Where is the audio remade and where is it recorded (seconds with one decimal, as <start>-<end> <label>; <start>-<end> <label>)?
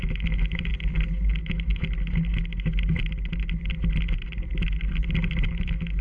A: 0.0-0.7 remade; 0.7-1.4 recorded; 1.4-1.8 remade; 1.8-5.4 recorded; 5.4-6.0 remade